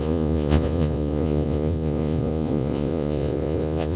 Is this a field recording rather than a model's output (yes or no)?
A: no